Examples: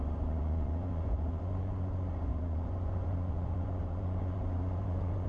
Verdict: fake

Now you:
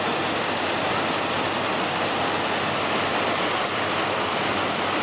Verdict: real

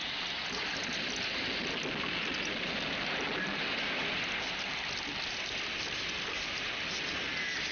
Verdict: real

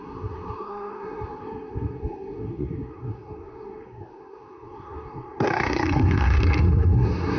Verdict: fake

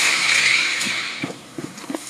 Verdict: fake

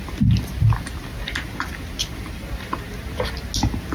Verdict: real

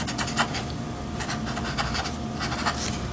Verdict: real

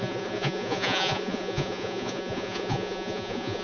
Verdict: fake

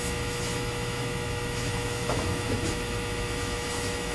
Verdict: fake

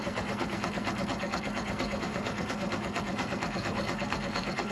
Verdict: fake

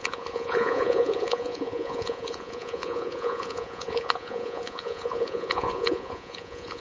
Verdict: fake